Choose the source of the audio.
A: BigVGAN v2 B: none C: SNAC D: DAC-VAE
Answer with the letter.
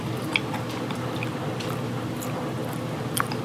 B